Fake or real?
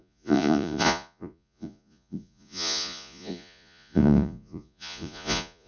fake